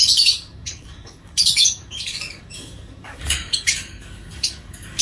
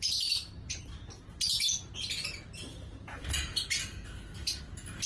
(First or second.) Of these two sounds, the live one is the second